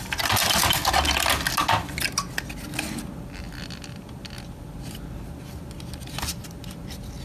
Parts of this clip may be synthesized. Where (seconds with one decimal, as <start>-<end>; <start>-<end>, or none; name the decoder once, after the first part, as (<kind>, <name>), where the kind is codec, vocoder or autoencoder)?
none